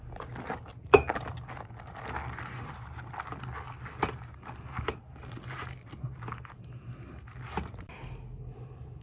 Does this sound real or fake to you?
real